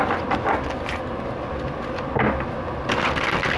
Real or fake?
real